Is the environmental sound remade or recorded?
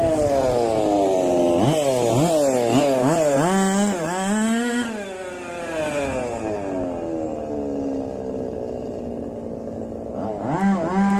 recorded